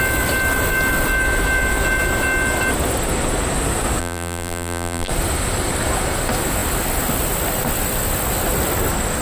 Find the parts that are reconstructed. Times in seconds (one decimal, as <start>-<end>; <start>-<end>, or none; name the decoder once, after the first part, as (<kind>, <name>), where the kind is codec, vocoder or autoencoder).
4.0-5.1 (vocoder, BigVGAN v2)